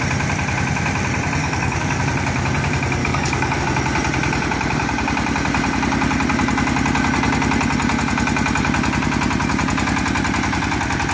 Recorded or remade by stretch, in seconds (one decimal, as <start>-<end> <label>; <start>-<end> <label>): 0.0-1.4 recorded; 1.4-2.0 remade; 2.0-3.0 recorded; 3.0-3.6 remade; 3.6-11.1 recorded